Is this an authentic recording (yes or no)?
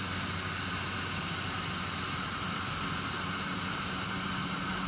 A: yes